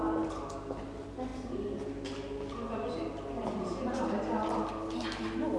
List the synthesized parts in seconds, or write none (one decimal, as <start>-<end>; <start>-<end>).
none